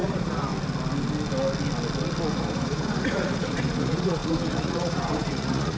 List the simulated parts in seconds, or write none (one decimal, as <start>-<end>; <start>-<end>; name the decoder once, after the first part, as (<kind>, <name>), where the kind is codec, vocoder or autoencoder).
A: 0.0-0.5 (vocoder, Vocos); 2.3-5.8